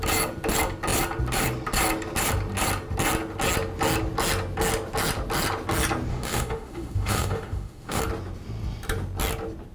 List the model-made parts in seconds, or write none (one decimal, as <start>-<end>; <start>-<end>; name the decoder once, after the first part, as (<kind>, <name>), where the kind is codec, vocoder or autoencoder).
6.1-8.0 (autoencoder, DAC-VAE)